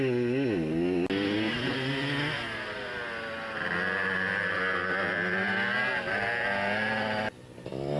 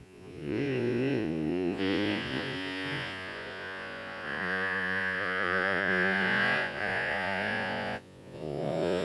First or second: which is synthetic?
second